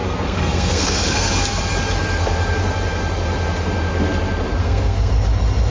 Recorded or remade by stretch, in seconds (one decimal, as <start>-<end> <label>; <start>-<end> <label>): 0.0-1.3 remade; 1.3-4.6 recorded; 4.6-5.1 remade; 5.1-5.7 recorded